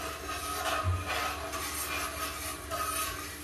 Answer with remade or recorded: recorded